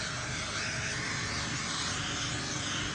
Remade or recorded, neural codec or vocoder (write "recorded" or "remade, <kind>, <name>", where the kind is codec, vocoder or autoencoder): recorded